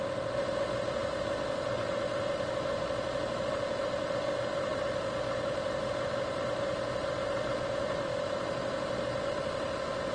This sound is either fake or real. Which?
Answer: real